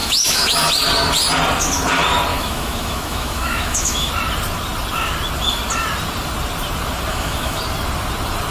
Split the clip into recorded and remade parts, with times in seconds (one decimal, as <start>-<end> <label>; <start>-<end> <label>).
0.0-0.7 remade; 0.7-2.3 recorded; 2.3-4.1 remade; 4.1-7.1 recorded; 7.1-7.6 remade; 7.6-8.5 recorded